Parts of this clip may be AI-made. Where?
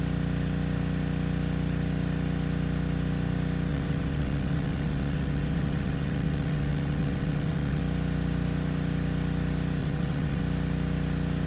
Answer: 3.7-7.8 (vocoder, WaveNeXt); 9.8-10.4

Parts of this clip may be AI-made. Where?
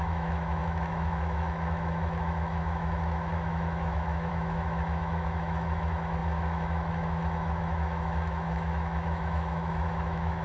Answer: 0.0-10.4 (autoencoder, DAC-VAE)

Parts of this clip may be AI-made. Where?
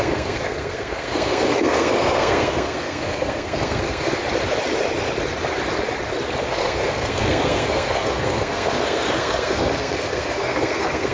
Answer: 0.0-4.2 (codec, SNAC); 6.4-11.1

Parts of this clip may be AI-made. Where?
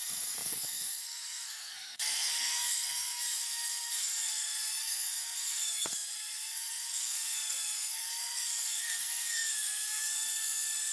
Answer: 0.0-10.9 (codec, SNAC)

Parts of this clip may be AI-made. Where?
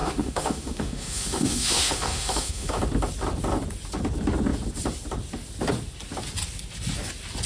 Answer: 0.0-2.8 (autoencoder, DAC-VAE)